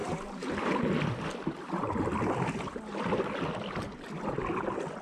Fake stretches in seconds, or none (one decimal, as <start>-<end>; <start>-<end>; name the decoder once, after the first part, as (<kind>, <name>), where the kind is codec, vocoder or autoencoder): 0.0-0.8 (vocoder, BigVGAN v2)